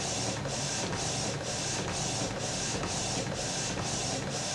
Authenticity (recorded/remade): remade